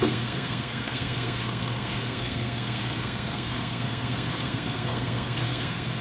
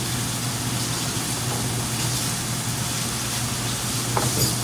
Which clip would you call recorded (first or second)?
second